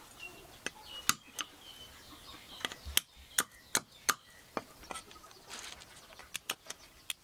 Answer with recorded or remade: recorded